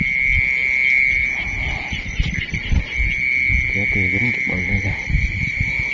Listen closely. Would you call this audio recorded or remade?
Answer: recorded